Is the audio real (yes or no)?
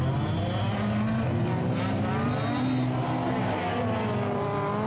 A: yes